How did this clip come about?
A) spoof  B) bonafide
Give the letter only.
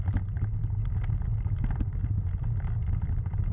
B